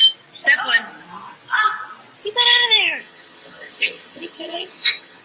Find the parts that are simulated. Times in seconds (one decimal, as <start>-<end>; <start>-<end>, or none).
3.0-5.2